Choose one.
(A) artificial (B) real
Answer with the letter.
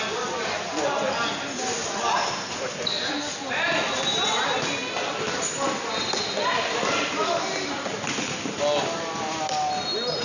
B